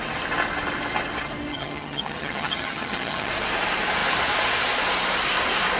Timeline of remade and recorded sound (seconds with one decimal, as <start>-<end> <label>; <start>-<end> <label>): 0.0-1.5 recorded; 1.5-3.3 remade; 3.3-5.8 recorded